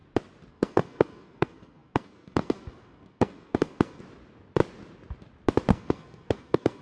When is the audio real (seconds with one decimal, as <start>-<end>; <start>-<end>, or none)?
0.0-0.5; 4.0-5.7